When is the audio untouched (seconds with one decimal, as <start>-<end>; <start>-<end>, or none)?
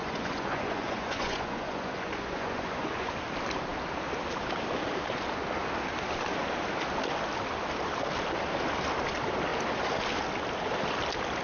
3.1-11.4